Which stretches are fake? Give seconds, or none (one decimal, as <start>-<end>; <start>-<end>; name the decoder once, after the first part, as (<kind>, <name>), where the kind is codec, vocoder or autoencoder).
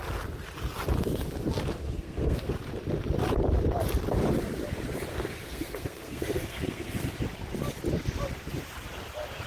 1.8-2.5 (codec, SNAC); 5.1-7.2